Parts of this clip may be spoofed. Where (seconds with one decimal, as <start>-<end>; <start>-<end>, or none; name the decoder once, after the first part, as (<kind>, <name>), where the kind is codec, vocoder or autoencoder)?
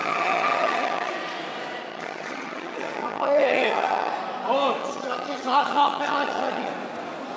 0.0-1.1 (vocoder, HiFi-GAN); 1.9-4.1; 4.8-6.7